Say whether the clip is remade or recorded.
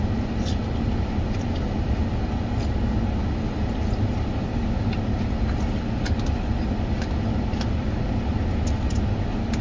recorded